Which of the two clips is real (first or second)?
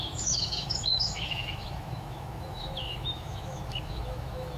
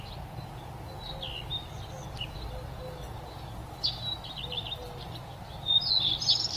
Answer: second